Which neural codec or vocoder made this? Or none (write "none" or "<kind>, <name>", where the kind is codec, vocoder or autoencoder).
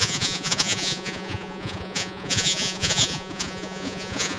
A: vocoder, Vocos